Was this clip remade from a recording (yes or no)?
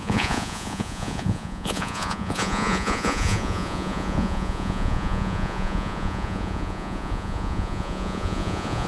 yes